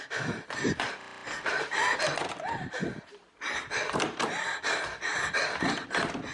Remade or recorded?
recorded